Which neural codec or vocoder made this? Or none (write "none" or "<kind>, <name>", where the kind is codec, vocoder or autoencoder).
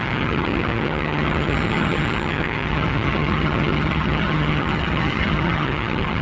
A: vocoder, HiFi-GAN